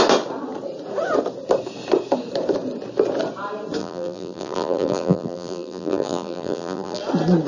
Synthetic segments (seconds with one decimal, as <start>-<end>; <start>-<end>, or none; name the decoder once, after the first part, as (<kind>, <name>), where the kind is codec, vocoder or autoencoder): 3.8-7.0 (vocoder, BigVGAN v2)

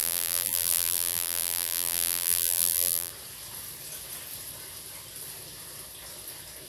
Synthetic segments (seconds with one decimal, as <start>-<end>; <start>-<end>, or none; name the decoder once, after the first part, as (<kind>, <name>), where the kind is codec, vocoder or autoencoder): 0.0-3.1 (vocoder, BigVGAN v2)

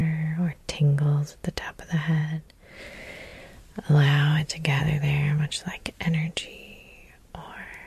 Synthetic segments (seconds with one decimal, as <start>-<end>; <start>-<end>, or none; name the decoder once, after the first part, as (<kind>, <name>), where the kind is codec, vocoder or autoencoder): 2.2-2.8 (vocoder, BigVGAN v2); 3.3-4.8; 5.8-6.4

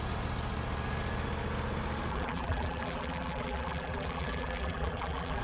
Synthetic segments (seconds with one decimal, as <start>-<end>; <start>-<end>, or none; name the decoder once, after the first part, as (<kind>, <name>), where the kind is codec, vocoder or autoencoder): 2.1-5.4 (vocoder, BigVGAN v2)

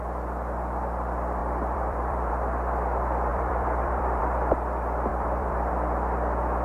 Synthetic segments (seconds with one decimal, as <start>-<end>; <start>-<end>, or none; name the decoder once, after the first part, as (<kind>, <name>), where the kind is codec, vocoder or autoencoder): 1.4-2.3 (vocoder, BigVGAN v2); 3.3-4.2; 5.1-5.7

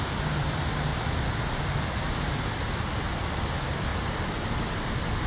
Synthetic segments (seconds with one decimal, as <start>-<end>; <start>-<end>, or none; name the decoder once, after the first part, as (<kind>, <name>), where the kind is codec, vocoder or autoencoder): 0.9-3.2 (vocoder, BigVGAN v2)

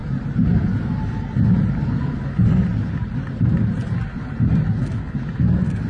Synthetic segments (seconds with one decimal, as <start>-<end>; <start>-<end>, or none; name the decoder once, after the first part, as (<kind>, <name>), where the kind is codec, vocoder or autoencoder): none

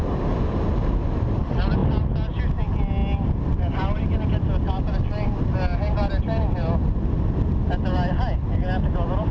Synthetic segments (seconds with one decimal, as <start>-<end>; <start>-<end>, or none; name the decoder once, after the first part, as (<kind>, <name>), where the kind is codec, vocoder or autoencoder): none